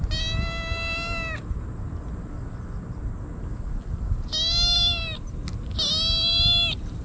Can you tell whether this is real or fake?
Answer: real